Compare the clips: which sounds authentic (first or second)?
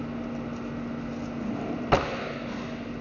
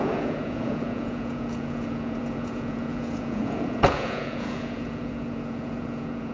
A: first